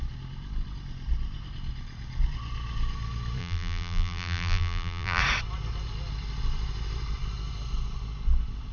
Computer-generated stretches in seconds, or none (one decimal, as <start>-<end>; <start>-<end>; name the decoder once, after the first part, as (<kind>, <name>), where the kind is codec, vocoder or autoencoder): 3.4-5.2 (vocoder, BigVGAN v2)